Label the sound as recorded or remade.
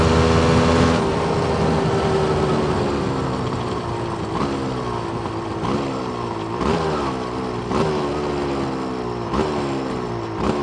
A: recorded